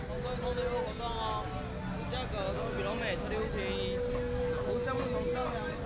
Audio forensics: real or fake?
real